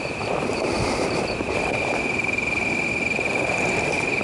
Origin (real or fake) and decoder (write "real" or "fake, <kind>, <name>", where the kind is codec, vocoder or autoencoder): real